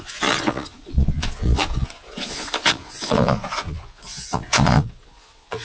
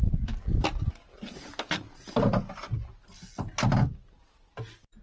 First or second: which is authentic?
second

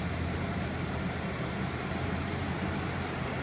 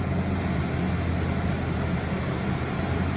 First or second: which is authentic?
second